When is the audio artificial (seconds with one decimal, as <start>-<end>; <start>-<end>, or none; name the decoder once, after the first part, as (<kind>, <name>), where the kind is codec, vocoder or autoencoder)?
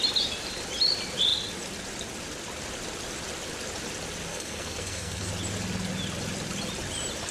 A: 4.3-5.3 (codec, SNAC)